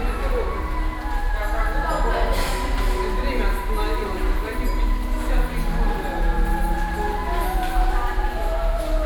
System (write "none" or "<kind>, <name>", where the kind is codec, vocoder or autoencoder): none